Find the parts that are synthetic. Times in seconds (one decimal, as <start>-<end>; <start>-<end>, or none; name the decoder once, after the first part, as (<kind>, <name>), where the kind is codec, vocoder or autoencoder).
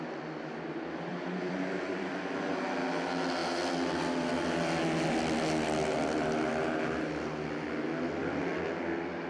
1.1-2.1 (vocoder, BigVGAN v2)